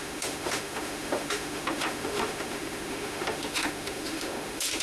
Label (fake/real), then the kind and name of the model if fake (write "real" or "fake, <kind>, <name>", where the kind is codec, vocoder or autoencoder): fake, autoencoder, DAC-VAE